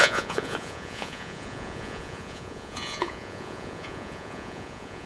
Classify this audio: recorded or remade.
remade